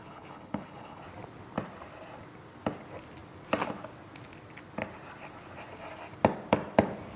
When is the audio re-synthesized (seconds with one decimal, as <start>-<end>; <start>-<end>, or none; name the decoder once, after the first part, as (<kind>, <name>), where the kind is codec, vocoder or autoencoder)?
0.0-1.0 (codec, HILCodec)